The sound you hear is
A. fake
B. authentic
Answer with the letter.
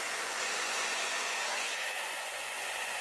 A